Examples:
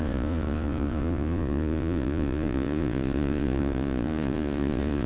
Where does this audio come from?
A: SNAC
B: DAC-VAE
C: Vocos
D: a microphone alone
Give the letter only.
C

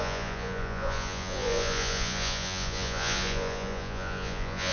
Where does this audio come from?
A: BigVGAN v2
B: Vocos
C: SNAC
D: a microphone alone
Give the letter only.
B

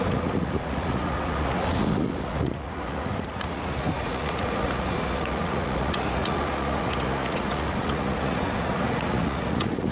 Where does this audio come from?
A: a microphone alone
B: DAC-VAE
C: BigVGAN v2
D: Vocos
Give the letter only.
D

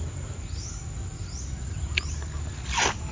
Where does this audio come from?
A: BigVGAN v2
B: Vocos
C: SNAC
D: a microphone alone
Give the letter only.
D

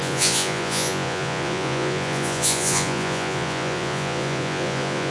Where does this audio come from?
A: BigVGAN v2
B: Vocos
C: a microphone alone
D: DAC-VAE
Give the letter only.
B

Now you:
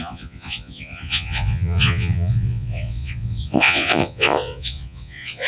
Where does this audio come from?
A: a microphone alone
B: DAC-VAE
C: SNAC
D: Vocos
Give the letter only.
D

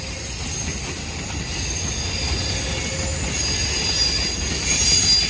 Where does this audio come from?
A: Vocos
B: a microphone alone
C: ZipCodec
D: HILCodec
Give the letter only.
B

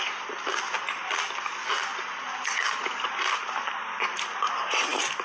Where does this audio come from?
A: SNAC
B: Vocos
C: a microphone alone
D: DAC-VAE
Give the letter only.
C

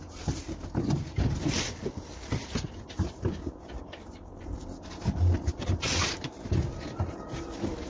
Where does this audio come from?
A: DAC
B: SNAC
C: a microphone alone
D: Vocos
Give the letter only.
C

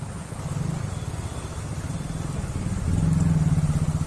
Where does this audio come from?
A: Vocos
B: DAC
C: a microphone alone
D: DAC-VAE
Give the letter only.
C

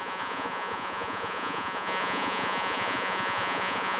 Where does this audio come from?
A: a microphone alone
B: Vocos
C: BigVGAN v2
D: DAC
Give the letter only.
B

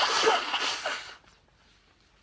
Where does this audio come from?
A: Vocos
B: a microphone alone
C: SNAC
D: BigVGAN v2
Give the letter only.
B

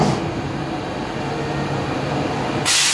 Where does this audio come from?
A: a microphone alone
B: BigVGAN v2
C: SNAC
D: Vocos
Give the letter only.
A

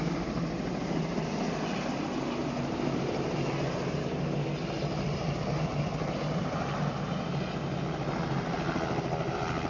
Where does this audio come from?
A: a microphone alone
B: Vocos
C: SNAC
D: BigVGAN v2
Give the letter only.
A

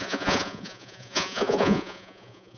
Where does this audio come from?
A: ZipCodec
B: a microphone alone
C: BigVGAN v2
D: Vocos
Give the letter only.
D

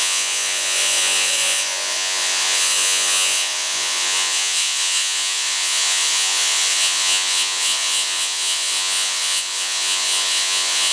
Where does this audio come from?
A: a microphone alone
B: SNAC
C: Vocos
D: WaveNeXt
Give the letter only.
C